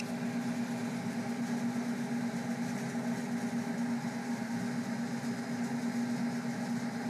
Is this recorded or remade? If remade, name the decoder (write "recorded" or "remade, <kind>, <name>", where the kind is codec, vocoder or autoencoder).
recorded